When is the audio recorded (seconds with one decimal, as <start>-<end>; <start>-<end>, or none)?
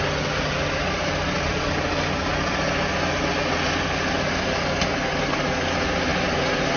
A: 0.0-6.8